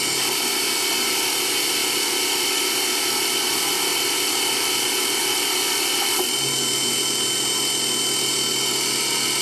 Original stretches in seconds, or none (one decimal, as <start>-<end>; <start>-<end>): 0.0-1.8; 2.6-3.9; 4.6-9.4

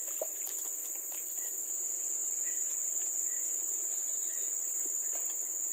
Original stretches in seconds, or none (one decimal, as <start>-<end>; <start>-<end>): 0.0-5.7

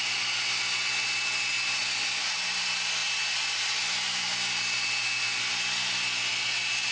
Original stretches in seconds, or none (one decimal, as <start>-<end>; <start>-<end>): 0.0-6.9

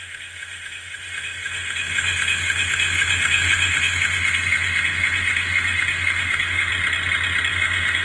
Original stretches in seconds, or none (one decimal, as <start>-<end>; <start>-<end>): 6.7-7.5

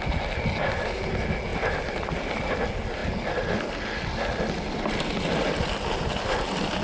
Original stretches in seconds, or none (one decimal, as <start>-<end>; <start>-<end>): 0.0-6.8

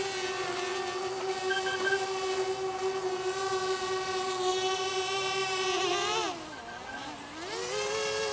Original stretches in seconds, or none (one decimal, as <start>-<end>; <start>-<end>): 0.0-8.3

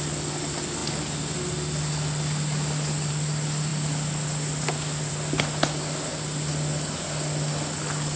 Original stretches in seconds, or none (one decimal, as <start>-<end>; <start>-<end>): 0.0-8.2